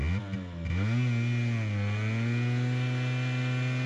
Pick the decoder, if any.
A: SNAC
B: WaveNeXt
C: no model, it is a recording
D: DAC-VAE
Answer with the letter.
C